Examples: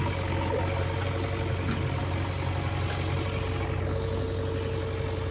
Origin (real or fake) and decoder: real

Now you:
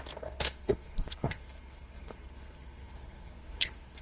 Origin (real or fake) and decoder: fake, codec, SNAC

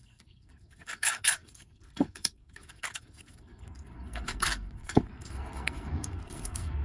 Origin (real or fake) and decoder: fake, codec, SNAC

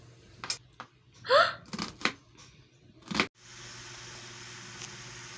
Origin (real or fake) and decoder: real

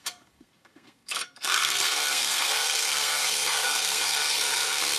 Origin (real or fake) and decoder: fake, codec, SNAC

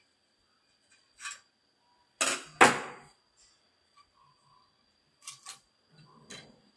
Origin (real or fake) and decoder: real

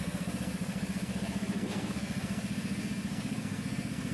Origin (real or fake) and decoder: fake, codec, SNAC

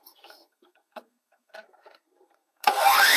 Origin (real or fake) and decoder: fake, codec, SNAC